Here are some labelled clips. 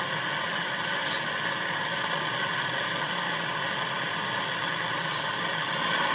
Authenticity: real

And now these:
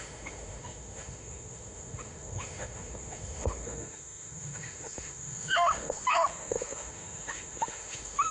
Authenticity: fake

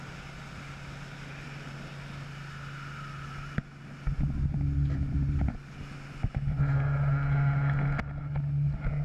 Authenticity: real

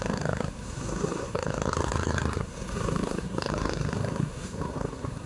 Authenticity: fake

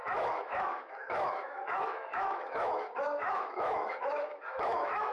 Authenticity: fake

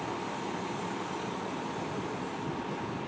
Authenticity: real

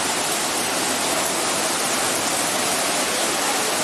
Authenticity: real